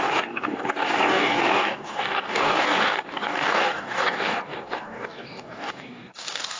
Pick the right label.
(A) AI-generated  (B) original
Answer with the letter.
A